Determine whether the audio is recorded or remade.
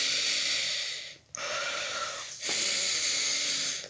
recorded